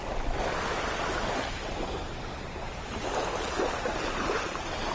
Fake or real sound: real